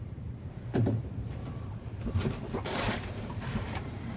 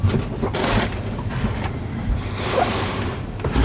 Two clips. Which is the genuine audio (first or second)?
second